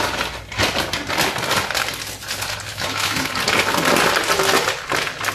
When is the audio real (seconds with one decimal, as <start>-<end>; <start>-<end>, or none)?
0.0-2.7; 3.3-5.3